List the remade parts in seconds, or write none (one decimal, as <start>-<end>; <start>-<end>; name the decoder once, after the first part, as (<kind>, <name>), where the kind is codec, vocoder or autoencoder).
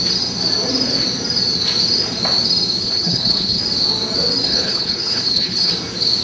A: 2.8-3.6 (codec, HILCodec); 4.5-5.7